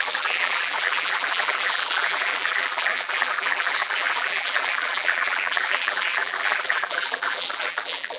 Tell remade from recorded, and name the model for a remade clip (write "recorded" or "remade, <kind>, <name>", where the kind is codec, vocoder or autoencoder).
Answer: remade, vocoder, BigVGAN v2